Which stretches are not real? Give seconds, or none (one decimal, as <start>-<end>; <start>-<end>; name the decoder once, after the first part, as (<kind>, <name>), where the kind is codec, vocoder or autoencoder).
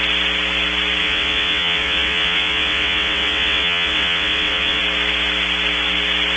1.0-4.8 (vocoder, WaveNeXt)